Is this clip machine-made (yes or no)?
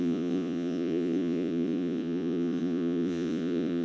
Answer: yes